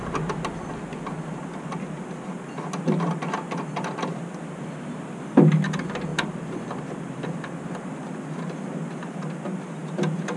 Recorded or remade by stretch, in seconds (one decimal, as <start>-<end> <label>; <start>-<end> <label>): 0.0-10.4 recorded

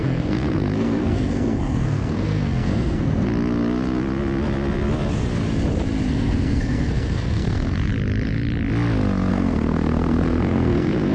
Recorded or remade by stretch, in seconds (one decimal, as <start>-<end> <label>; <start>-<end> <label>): 0.0-3.3 remade; 3.3-6.1 recorded; 6.1-7.9 remade; 7.9-9.3 recorded; 9.3-11.1 remade

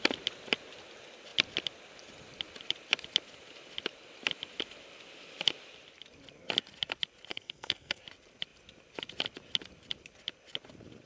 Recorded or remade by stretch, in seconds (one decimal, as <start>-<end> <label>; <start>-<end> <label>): 0.0-7.3 recorded; 7.3-8.0 remade; 8.0-11.1 recorded

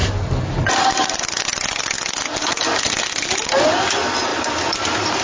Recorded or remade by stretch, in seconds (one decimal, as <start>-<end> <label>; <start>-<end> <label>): 0.0-5.2 recorded

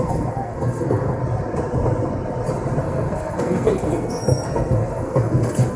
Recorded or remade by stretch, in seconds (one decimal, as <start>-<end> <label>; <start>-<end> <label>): 0.0-1.2 remade; 1.2-2.8 recorded; 2.8-5.8 remade

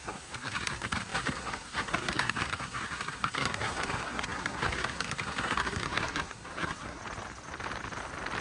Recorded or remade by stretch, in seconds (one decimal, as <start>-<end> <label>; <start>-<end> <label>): 0.0-7.0 remade; 7.0-8.4 recorded

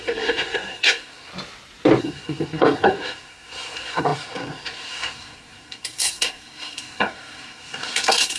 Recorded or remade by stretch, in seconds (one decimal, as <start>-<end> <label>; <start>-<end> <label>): 0.0-1.3 remade; 1.3-2.0 recorded; 2.0-8.4 remade

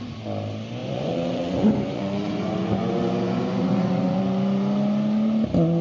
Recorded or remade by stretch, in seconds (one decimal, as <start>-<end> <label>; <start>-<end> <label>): 0.0-0.8 recorded; 0.8-4.2 remade; 4.2-5.8 recorded